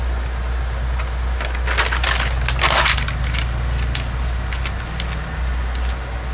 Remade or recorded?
recorded